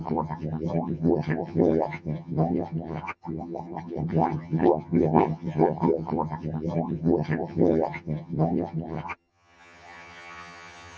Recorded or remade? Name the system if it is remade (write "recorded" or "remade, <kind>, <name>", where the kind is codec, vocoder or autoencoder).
remade, vocoder, HiFi-GAN